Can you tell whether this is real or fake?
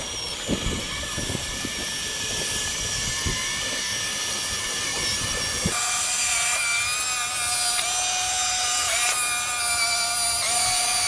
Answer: real